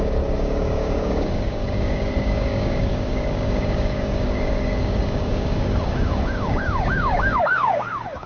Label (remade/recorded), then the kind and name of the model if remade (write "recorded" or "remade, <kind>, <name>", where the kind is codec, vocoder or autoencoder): remade, codec, DAC